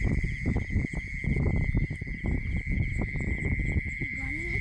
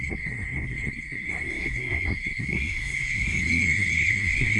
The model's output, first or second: second